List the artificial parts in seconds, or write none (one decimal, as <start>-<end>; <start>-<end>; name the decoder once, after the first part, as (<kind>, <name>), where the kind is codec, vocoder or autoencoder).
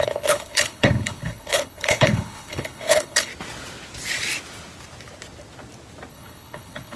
0.0-3.3 (codec, HILCodec); 6.1-7.0